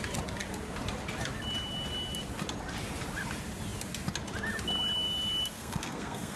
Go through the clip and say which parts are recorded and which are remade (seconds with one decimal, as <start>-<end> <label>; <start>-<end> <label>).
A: 0.0-5.5 recorded; 5.5-6.4 remade